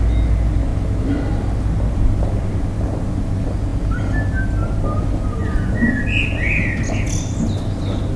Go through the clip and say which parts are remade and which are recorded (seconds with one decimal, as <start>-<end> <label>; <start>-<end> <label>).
0.0-5.4 recorded; 5.4-6.0 remade; 6.0-8.2 recorded